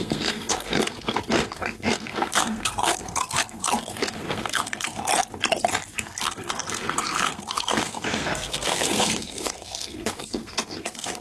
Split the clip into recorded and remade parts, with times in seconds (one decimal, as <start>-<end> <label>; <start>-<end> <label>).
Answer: 0.0-5.1 remade; 5.1-5.9 recorded; 5.9-11.2 remade